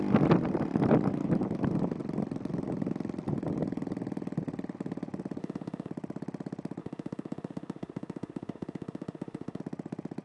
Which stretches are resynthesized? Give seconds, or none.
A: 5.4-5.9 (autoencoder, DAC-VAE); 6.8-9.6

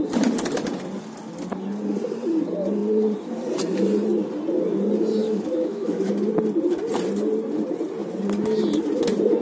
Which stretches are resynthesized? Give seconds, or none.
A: 5.2-6.1 (autoencoder, DAC-VAE)

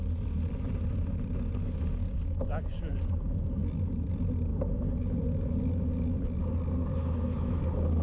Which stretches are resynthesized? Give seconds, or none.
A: 6.9-7.6 (autoencoder, DAC-VAE)

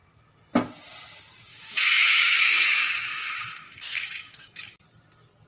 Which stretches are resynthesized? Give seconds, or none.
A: 1.5-4.8 (autoencoder, DAC-VAE)

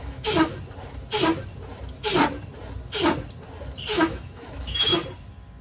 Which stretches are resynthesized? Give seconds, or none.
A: 0.0-0.5 (autoencoder, DAC-VAE); 3.9-4.9

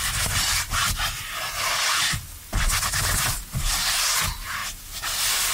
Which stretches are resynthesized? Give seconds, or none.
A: none